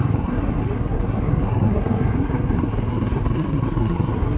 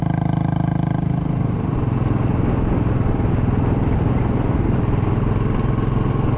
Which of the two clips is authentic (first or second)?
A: second